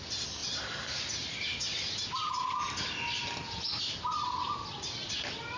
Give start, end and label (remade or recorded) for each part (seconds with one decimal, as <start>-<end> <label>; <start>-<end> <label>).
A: 0.0-5.6 recorded